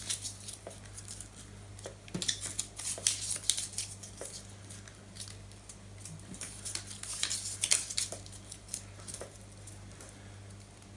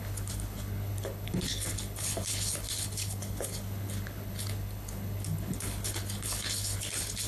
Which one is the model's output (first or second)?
second